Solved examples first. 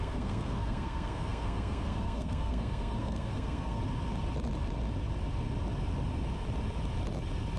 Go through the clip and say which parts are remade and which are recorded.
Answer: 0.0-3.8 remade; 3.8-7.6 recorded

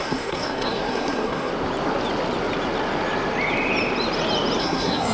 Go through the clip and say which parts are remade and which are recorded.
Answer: 0.0-1.5 remade; 1.5-4.6 recorded; 4.6-5.1 remade

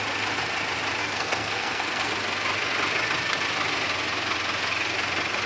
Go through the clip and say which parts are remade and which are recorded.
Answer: 0.0-1.0 recorded; 1.0-2.1 remade; 2.1-5.5 recorded

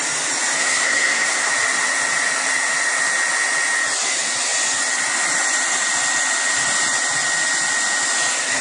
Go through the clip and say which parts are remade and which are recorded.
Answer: 0.0-0.6 recorded; 0.6-1.5 remade; 1.5-8.6 recorded

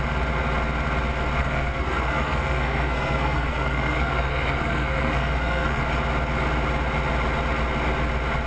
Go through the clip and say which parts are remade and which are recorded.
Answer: 0.0-1.4 recorded; 1.4-5.8 remade; 5.8-8.5 recorded

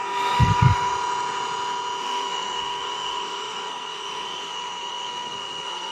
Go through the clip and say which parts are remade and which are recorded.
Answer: 0.0-0.9 remade; 0.9-2.0 recorded; 2.0-5.9 remade

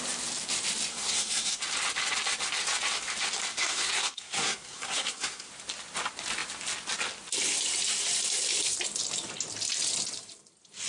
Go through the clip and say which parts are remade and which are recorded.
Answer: 0.0-0.9 recorded; 0.9-1.6 remade; 1.6-3.5 recorded; 3.5-5.5 remade; 5.5-10.9 recorded